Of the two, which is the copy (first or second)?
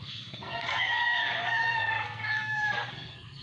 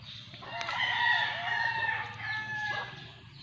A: first